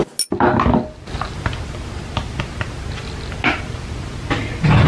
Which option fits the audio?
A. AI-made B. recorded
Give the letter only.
B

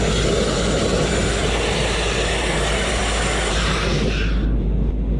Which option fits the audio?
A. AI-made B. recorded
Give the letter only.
B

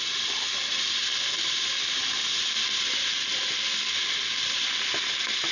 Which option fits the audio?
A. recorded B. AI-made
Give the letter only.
A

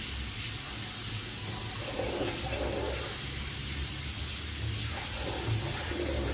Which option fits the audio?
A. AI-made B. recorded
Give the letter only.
B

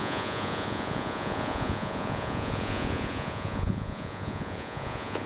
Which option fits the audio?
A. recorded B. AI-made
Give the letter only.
B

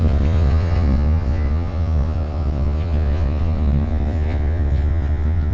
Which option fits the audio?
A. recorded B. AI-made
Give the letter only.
B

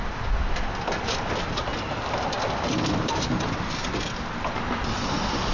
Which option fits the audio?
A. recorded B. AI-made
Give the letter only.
A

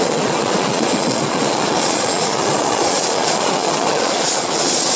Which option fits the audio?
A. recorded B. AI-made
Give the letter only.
B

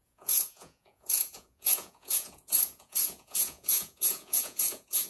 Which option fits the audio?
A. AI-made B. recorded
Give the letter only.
A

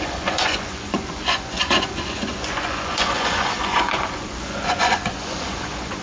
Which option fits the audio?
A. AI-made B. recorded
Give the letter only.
A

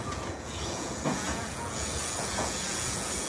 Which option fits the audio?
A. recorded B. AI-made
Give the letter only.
B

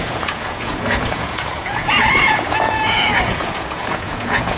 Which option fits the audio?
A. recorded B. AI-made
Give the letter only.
B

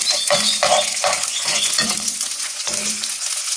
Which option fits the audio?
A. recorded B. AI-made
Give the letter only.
B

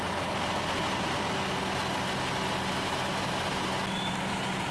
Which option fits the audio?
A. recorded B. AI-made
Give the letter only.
A